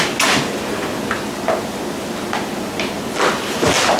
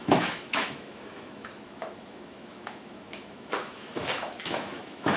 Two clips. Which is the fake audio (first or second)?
second